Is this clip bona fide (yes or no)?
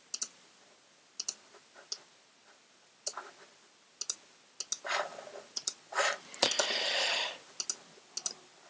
yes